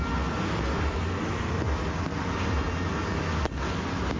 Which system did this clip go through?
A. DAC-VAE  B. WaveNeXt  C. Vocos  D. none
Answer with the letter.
D